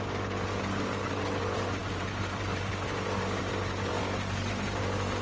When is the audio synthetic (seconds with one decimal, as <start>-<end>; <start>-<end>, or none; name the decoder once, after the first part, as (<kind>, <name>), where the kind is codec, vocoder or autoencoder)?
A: 0.0-3.9 (vocoder, BigVGAN v2); 4.5-5.2